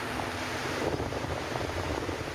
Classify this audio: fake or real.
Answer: real